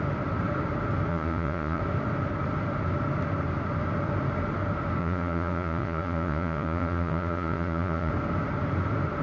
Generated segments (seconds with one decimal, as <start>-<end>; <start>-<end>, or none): 1.1-1.8; 5.0-8.1